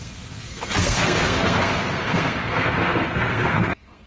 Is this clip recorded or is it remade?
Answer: remade